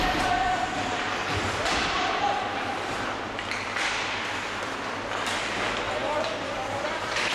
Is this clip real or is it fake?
fake